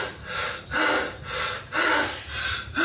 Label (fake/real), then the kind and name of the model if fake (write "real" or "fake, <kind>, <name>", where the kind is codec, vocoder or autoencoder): real